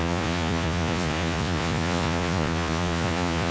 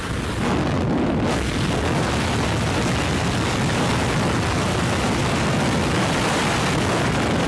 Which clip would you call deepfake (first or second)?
first